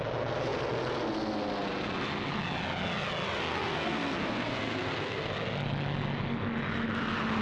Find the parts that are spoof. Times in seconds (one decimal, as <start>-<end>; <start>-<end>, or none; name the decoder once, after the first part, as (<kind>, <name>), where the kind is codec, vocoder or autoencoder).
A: 3.4-5.3 (codec, SNAC)